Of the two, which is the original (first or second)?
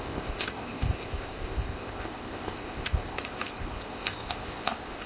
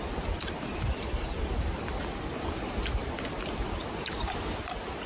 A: second